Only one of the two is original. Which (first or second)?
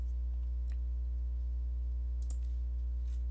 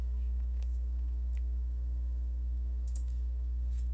first